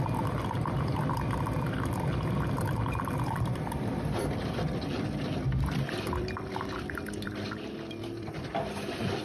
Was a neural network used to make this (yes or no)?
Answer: yes